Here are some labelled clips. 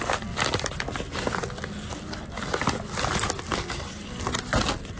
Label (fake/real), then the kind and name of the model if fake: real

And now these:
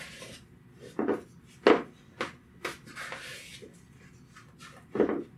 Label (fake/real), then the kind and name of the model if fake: real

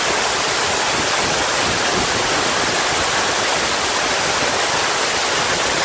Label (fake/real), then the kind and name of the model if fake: real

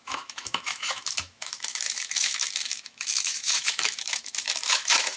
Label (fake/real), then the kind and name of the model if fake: fake, autoencoder, DAC-VAE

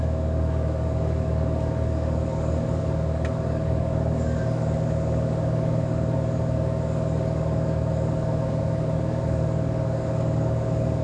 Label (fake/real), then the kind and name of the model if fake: fake, codec, DAC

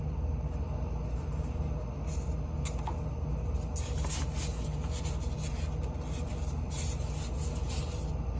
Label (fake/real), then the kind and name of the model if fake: real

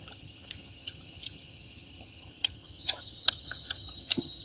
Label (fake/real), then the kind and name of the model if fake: fake, vocoder, HiFi-GAN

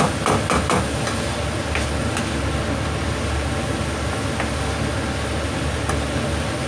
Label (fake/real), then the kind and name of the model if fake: real